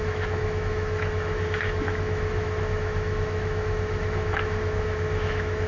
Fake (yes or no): yes